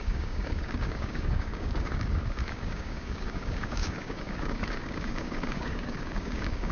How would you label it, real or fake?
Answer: fake